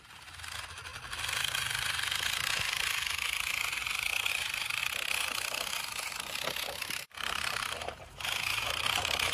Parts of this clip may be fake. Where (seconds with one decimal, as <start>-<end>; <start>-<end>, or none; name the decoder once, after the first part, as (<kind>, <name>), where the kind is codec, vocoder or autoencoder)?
0.0-0.9 (vocoder, BigVGAN v2); 4.3-4.8; 6.8-9.3